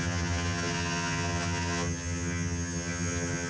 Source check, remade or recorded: remade